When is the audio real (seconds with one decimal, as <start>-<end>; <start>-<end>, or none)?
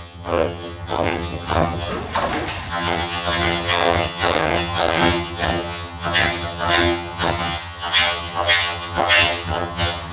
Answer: 1.9-2.7